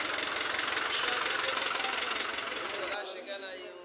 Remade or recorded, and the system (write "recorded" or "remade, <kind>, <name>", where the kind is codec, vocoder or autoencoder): recorded